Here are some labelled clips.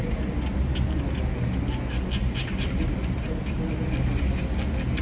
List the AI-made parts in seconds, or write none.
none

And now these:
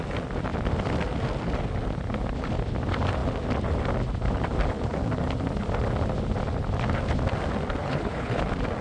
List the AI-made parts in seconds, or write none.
7.8-8.4 (codec, HILCodec)

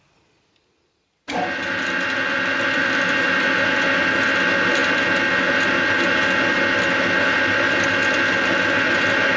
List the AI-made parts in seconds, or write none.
none

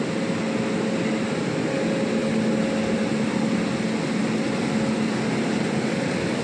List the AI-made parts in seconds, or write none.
none

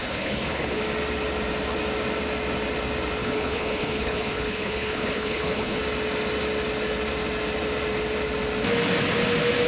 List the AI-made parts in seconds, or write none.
0.0-0.8 (codec, HILCodec); 3.2-5.8

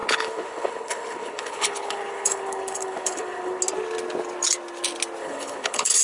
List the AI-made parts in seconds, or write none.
0.0-3.6 (codec, HILCodec); 5.2-6.0

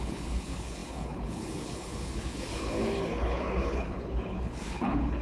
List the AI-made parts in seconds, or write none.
0.0-5.2 (codec, HILCodec)